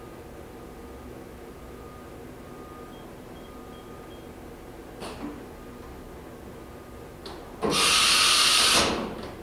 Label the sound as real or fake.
real